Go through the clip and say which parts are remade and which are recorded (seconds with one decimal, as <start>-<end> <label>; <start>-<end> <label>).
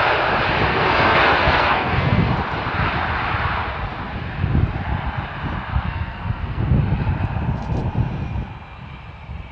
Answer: 0.0-0.7 recorded; 0.7-2.3 remade; 2.3-5.7 recorded; 5.7-6.6 remade; 6.6-9.5 recorded